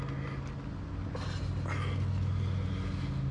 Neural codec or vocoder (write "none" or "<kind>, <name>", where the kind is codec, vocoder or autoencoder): none